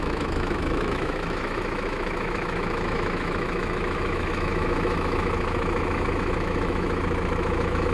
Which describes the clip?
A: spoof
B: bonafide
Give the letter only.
A